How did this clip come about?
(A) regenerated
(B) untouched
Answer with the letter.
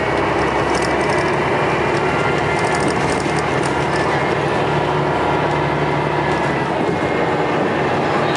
B